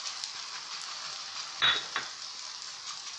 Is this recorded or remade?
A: recorded